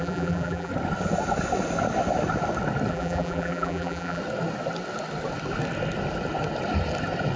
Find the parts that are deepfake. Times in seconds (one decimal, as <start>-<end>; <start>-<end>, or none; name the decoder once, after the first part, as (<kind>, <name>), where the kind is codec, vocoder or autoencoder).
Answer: 0.0-0.7 (vocoder, BigVGAN v2); 2.9-4.2

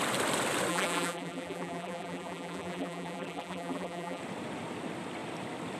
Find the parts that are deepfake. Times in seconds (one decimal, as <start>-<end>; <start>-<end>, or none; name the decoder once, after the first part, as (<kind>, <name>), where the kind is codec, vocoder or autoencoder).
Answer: 0.7-4.2 (vocoder, BigVGAN v2)

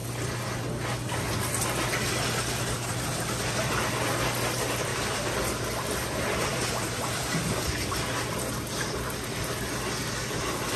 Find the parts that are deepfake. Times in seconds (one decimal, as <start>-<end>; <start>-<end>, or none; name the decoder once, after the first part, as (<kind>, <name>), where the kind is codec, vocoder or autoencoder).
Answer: 4.9-5.5 (vocoder, BigVGAN v2); 6.5-7.3

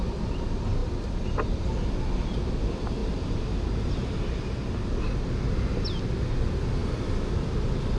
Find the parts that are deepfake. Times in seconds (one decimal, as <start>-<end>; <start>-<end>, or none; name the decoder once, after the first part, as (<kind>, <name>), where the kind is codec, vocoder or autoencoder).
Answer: none

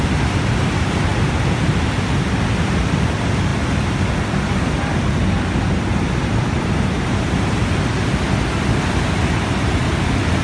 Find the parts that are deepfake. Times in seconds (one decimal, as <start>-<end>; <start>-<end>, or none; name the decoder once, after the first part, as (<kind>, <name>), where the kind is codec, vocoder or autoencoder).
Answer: 6.3-7.6 (vocoder, BigVGAN v2)

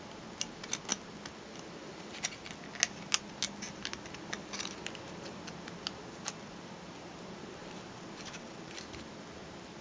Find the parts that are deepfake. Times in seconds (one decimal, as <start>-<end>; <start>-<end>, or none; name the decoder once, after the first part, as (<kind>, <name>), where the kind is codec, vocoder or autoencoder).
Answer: 7.6-8.7 (vocoder, BigVGAN v2)

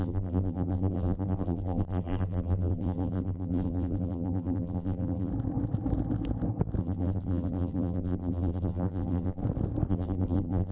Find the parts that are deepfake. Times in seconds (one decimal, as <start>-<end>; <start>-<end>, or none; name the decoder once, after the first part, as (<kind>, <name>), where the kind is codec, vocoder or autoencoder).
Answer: 0.0-5.3 (vocoder, BigVGAN v2); 6.8-9.4; 9.9-10.7

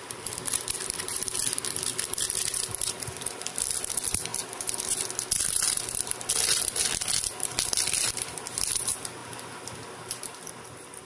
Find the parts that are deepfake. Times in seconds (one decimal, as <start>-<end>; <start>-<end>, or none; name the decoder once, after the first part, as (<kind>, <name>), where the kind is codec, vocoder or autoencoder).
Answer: 0.0-4.3 (vocoder, BigVGAN v2); 5.5-11.1